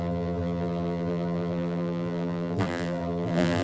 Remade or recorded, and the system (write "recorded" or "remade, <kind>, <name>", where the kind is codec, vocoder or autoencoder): remade, vocoder, BigVGAN v2